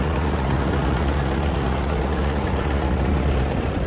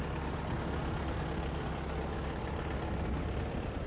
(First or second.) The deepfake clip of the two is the first